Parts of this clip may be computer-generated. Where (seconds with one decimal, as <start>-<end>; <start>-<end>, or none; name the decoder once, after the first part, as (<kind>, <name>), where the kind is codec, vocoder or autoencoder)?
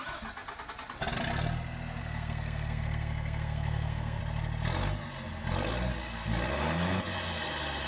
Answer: 2.0-4.2 (codec, SNAC)